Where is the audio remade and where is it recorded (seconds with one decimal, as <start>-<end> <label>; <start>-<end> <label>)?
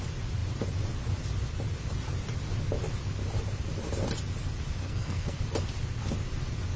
0.0-4.8 recorded; 4.8-5.4 remade; 5.4-6.8 recorded